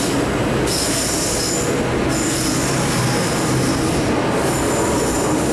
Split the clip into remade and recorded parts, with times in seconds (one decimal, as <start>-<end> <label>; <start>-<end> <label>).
0.0-5.5 recorded